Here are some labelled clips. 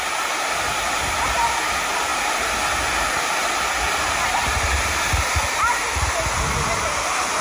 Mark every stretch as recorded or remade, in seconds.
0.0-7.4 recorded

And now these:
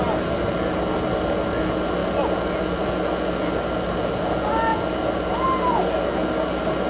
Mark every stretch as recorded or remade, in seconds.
0.0-6.9 recorded

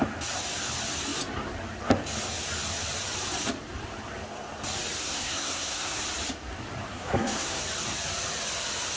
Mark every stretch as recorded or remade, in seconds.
0.0-5.0 recorded; 5.0-6.0 remade; 6.0-6.9 recorded; 6.9-7.6 remade; 7.6-9.0 recorded

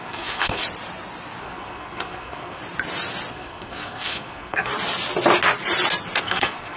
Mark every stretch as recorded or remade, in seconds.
0.0-0.6 remade; 0.6-1.4 recorded; 1.4-2.6 remade; 2.6-3.3 recorded; 3.3-4.7 remade; 4.7-6.2 recorded; 6.2-6.8 remade

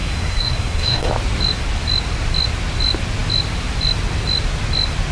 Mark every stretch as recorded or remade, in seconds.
0.0-1.1 remade; 1.1-5.1 recorded